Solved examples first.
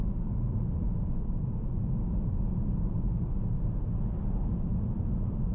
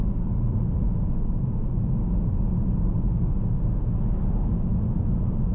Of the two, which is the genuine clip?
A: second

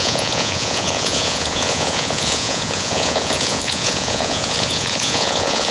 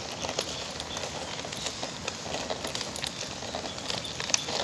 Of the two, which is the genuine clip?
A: second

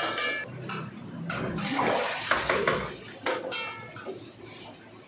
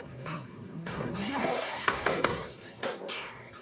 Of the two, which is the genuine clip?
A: first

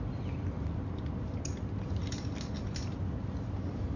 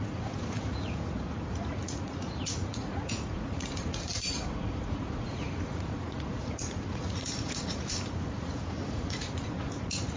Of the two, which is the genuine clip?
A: first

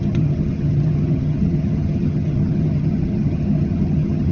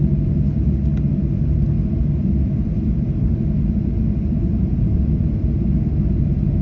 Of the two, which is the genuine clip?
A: second